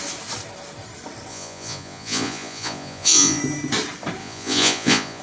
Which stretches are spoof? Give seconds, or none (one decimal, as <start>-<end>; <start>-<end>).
1.3-3.4; 4.2-5.2